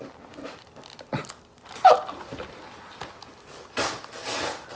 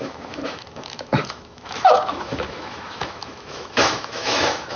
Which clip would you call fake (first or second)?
second